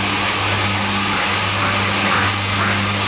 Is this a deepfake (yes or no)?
no